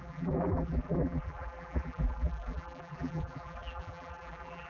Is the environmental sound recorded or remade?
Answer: remade